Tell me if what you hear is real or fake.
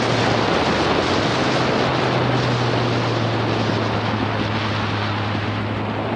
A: real